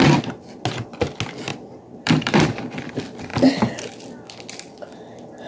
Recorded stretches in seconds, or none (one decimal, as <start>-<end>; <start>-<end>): 0.0-1.5; 2.9-5.5

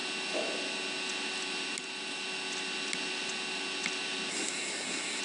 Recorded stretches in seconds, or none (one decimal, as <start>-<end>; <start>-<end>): 0.0-4.3

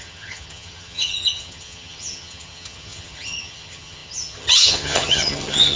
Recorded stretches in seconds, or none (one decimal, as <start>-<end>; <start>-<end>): none